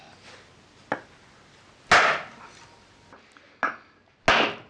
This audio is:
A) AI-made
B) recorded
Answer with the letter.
B